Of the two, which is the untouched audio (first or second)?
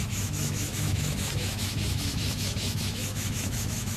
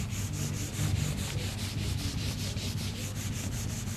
second